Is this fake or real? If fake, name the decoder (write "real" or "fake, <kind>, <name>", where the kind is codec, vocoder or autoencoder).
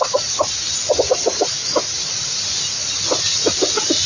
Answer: real